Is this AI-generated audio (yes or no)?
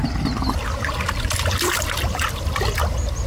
no